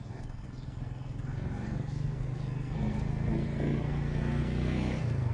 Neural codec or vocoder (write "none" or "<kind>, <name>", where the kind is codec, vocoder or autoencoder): codec, SNAC